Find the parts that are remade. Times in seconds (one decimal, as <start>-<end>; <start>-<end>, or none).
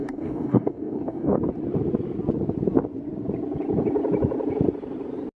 0.0-1.4